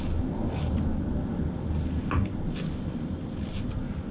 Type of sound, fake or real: real